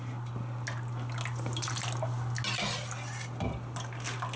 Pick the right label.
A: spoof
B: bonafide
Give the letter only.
B